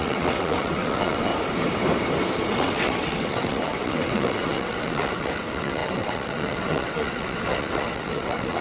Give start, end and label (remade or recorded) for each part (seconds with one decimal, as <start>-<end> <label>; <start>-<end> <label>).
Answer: 0.0-1.3 remade; 1.3-2.4 recorded; 2.4-8.6 remade